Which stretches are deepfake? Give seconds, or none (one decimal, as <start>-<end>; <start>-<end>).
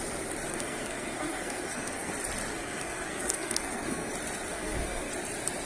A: 0.5-2.1; 2.5-4.1; 4.5-5.1